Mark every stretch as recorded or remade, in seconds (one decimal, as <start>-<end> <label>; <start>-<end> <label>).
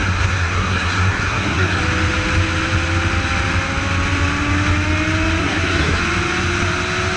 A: 0.0-1.8 remade; 1.8-5.4 recorded; 5.4-6.0 remade; 6.0-7.2 recorded